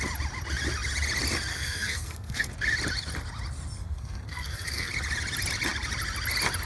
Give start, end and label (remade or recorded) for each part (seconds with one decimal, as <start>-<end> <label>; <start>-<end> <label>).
0.0-1.5 recorded; 1.5-2.5 remade; 2.5-3.8 recorded; 3.8-4.9 remade; 4.9-6.7 recorded